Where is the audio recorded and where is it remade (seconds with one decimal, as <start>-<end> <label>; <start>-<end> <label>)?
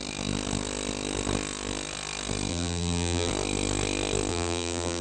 0.0-2.5 recorded; 2.5-3.3 remade; 3.3-4.3 recorded; 4.3-5.0 remade